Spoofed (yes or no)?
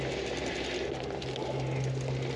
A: no